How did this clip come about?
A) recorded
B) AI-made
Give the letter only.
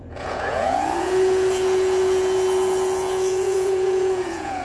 B